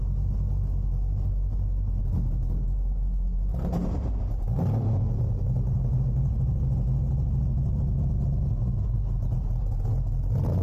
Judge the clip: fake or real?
real